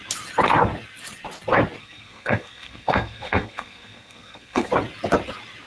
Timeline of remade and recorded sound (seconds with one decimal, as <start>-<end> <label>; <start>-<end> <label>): 0.0-1.8 recorded; 1.8-4.7 remade; 4.7-5.7 recorded